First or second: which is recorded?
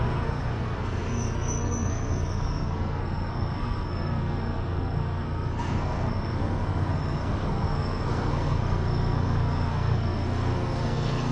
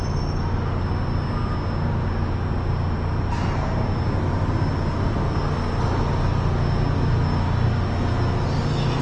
second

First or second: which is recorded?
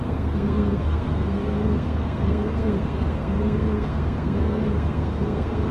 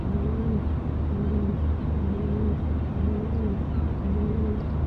second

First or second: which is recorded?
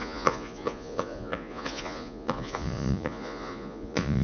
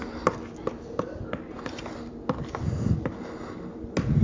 second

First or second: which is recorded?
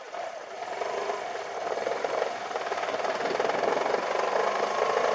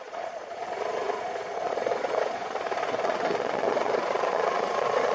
first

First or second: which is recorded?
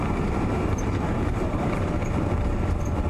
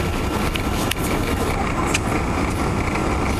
second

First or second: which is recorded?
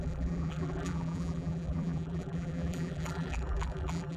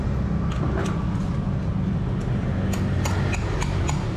second